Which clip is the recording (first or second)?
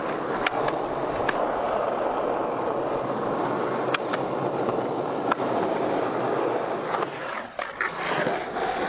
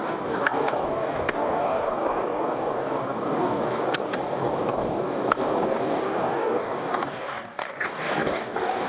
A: first